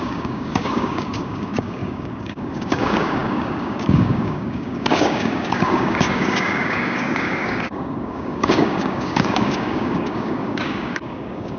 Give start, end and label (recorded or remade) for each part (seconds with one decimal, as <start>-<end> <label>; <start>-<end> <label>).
0.0-11.6 remade